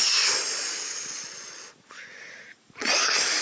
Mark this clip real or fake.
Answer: real